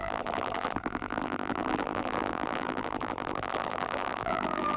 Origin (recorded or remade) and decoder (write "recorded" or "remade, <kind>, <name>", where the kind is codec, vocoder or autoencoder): remade, vocoder, BigVGAN v2